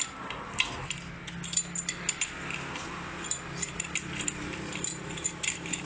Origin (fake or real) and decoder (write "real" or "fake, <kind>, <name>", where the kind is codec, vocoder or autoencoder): real